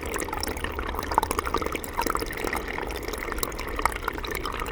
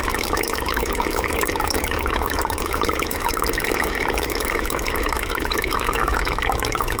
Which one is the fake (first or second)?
second